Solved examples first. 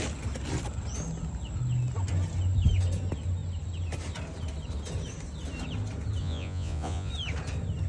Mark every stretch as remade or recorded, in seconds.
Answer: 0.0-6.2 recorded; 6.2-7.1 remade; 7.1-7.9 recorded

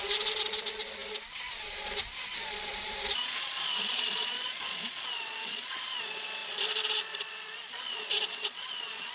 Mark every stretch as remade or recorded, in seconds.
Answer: 0.0-9.1 remade

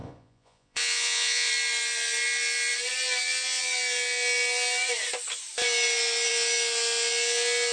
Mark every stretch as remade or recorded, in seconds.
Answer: 0.0-1.5 remade; 1.5-7.7 recorded